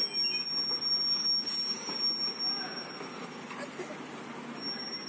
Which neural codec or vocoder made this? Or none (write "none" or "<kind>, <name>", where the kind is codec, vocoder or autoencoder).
none